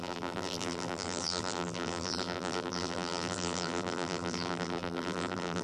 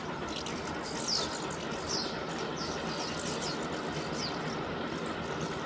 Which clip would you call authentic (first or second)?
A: second